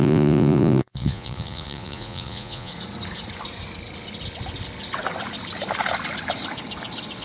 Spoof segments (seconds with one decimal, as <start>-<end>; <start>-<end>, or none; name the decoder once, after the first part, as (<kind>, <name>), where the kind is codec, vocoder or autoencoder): 0.0-2.7 (vocoder, Vocos)